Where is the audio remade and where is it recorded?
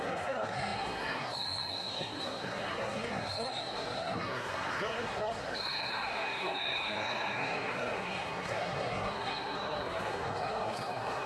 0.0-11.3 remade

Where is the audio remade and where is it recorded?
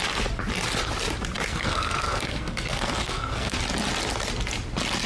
0.0-1.5 recorded; 1.5-3.6 remade; 3.6-5.1 recorded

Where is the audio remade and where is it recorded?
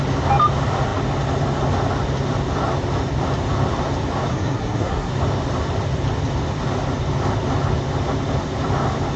0.0-4.3 recorded; 4.3-5.1 remade; 5.1-9.2 recorded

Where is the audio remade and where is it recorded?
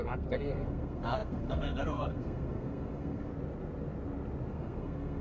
0.0-3.3 remade; 3.3-4.5 recorded; 4.5-5.2 remade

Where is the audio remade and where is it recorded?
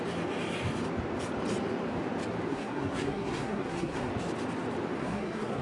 0.0-2.5 recorded; 2.5-4.1 remade; 4.1-5.0 recorded; 5.0-5.6 remade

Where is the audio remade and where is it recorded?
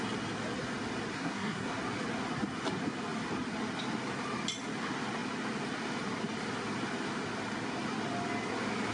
0.0-1.1 recorded; 1.1-1.8 remade; 1.8-8.9 recorded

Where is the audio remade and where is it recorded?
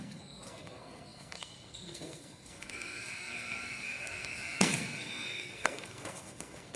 0.0-6.8 remade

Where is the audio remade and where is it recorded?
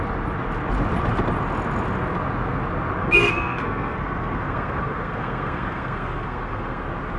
0.0-3.0 recorded; 3.0-6.8 remade; 6.8-7.2 recorded